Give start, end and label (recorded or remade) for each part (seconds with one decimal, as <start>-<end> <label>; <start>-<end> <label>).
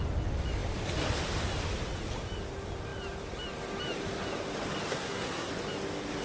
0.0-4.9 recorded; 4.9-5.5 remade; 5.5-6.2 recorded